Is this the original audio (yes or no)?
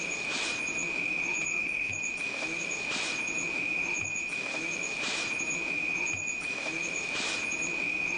no